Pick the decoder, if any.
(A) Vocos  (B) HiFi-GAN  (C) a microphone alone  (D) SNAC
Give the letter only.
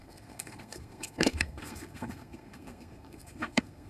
D